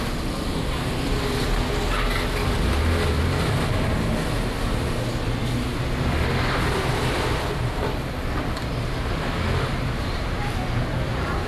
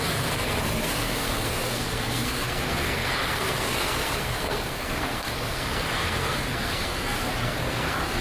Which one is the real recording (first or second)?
first